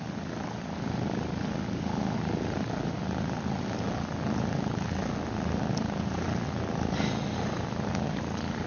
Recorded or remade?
recorded